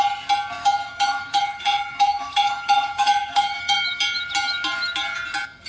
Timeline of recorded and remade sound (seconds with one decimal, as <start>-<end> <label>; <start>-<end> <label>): 0.0-0.6 recorded; 0.6-4.0 remade; 4.0-5.7 recorded